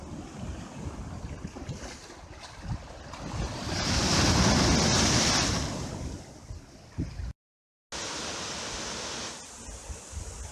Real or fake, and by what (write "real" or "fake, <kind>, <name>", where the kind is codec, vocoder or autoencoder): real